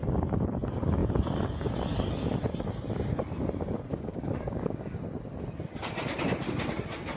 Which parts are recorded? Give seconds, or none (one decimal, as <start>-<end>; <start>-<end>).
0.0-3.9; 5.0-7.2